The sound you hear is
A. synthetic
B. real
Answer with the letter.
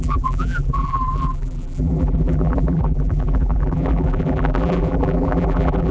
A